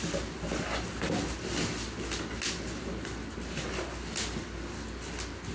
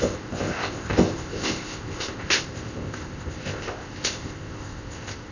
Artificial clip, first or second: second